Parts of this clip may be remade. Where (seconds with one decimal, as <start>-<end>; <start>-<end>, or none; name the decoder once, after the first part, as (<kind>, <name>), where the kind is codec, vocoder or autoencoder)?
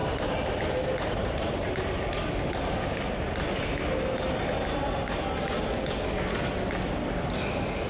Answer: 0.0-1.9 (vocoder, BigVGAN v2)